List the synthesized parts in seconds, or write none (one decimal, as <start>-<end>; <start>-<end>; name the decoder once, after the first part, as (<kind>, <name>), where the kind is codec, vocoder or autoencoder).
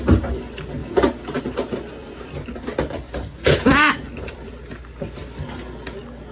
0.8-1.4 (vocoder, BigVGAN v2); 2.0-4.5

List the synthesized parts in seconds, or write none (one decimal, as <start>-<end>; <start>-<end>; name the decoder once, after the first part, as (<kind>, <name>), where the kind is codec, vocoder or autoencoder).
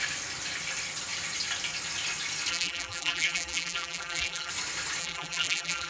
2.5-4.5 (vocoder, BigVGAN v2); 5.0-5.9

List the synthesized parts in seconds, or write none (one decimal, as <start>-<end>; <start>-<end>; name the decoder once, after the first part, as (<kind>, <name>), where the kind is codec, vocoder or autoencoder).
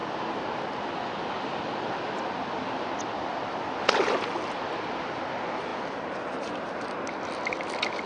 none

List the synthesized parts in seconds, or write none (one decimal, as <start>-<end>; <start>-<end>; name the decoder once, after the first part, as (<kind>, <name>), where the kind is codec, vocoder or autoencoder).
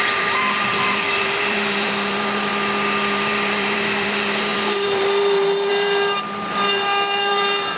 0.0-2.5 (vocoder, BigVGAN v2); 3.1-7.8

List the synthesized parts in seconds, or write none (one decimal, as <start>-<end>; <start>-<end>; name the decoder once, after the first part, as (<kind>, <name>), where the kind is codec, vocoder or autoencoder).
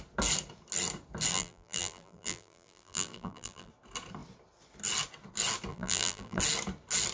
1.3-3.7 (vocoder, BigVGAN v2); 5.7-6.4